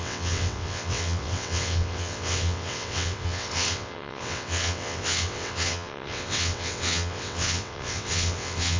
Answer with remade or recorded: remade